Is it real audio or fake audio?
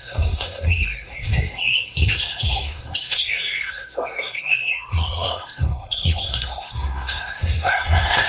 fake